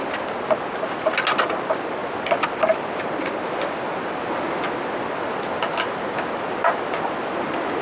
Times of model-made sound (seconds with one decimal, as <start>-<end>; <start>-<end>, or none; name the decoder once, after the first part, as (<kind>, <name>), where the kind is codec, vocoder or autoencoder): none